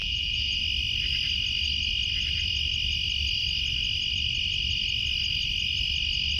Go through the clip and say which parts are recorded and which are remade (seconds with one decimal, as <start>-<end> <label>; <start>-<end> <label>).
0.0-0.6 remade; 0.6-6.4 recorded